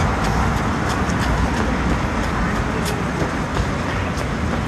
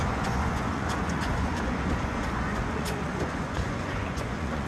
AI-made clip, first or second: second